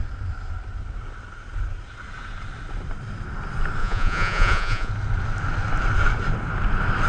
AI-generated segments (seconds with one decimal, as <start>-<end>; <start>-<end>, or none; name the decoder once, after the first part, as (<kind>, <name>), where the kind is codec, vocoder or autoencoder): 3.8-4.9 (vocoder, Vocos)